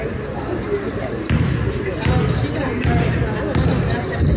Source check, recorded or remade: recorded